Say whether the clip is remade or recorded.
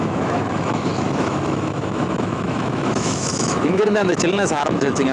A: remade